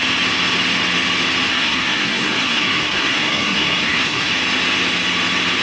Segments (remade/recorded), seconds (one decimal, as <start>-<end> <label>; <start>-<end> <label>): 0.0-1.5 recorded; 1.5-4.3 remade; 4.3-5.6 recorded

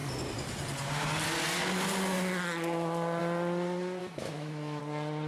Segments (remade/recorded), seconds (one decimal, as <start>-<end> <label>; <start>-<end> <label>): 0.0-4.0 recorded; 4.0-4.8 remade; 4.8-5.3 recorded

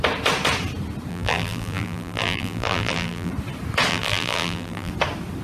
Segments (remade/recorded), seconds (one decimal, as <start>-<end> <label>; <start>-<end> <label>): 0.0-1.1 recorded; 1.1-3.3 remade; 3.3-3.9 recorded; 3.9-4.9 remade; 4.9-5.4 recorded

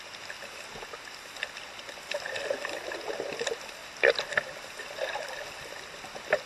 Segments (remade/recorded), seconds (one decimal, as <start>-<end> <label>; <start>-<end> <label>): 0.0-6.5 recorded

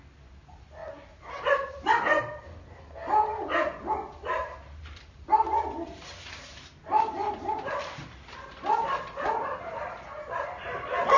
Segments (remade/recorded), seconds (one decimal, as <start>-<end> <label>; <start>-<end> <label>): 0.0-11.2 recorded

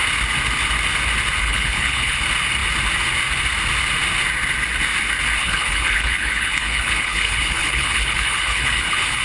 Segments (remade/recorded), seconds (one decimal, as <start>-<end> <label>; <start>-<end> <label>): 0.0-1.4 recorded; 1.4-2.2 remade; 2.2-5.4 recorded; 5.4-9.2 remade

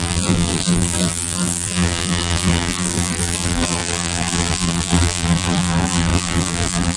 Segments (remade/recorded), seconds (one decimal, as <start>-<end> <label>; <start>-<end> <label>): 0.0-7.0 remade

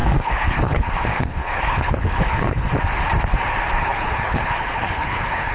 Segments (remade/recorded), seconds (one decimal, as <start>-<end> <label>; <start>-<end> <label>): 0.0-2.7 remade; 2.7-3.8 recorded; 3.8-5.5 remade